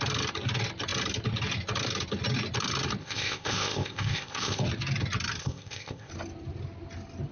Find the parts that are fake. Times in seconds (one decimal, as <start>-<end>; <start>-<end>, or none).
3.0-4.6; 5.4-6.1